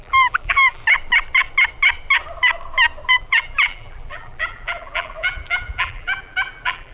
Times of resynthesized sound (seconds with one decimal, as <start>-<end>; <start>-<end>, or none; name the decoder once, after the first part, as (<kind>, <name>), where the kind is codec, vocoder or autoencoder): 0.0-0.8 (vocoder, BigVGAN v2); 3.2-6.9